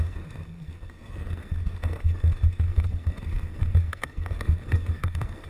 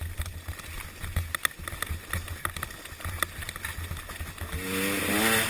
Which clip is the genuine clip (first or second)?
second